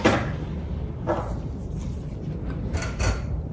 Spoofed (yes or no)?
no